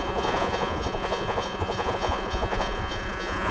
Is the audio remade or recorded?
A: remade